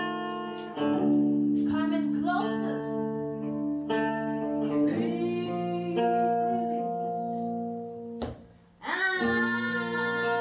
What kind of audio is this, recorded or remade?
recorded